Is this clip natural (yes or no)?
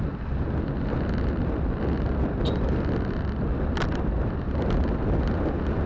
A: yes